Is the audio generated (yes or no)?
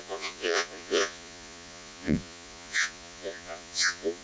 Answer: yes